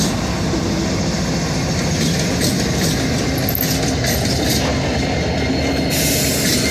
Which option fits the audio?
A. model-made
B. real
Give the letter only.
B